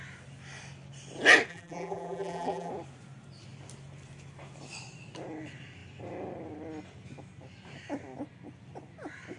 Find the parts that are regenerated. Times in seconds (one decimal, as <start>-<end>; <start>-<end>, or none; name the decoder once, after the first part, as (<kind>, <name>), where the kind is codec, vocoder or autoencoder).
1.5-2.7 (vocoder, BigVGAN v2)